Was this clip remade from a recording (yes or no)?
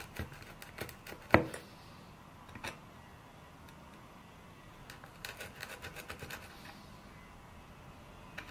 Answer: no